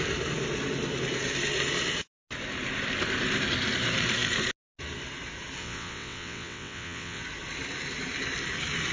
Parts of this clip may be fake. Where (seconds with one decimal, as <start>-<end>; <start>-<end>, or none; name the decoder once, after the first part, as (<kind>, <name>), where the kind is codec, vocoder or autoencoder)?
5.6-7.2 (vocoder, WaveNeXt)